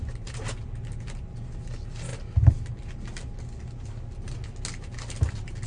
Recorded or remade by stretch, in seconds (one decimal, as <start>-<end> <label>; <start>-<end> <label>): 0.0-5.7 recorded

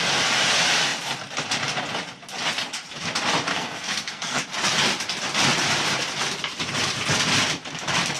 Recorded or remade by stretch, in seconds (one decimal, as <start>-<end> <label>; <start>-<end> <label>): 0.0-3.5 recorded; 3.5-4.4 remade; 4.4-8.2 recorded

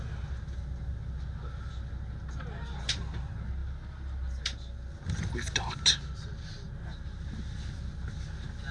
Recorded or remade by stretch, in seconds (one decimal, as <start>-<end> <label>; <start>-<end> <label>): 0.0-8.7 recorded

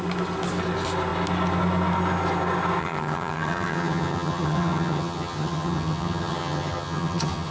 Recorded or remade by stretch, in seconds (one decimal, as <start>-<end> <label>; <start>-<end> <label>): 0.0-2.8 recorded; 2.8-7.5 remade